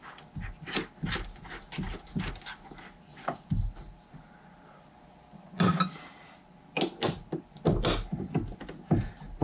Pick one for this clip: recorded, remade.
recorded